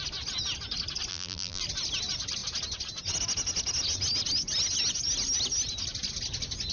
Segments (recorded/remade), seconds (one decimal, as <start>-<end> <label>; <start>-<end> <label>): 0.0-1.1 recorded; 1.1-1.6 remade; 1.6-6.7 recorded